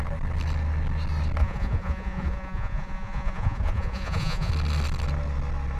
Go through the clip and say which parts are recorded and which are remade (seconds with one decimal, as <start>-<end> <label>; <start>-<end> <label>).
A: 0.0-1.4 recorded; 1.4-4.5 remade; 4.5-5.8 recorded